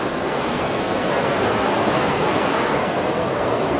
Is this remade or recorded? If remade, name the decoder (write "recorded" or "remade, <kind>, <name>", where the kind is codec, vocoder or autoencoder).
remade, codec, SNAC